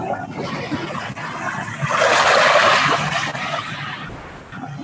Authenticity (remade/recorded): recorded